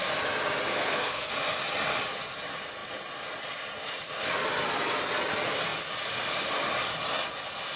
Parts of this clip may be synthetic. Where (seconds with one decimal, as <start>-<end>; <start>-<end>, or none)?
0.7-1.3